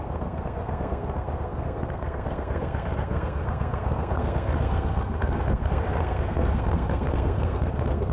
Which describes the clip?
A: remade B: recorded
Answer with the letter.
A